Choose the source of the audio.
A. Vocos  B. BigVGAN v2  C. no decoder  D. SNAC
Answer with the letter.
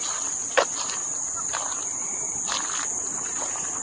C